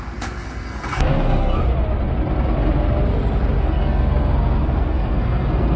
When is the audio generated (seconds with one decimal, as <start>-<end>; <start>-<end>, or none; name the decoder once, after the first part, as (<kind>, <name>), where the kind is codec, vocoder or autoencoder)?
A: 0.0-1.6 (codec, SNAC); 3.6-5.8